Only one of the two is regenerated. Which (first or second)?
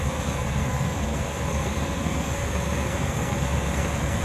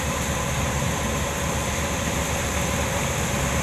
first